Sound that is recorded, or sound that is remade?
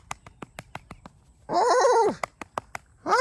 recorded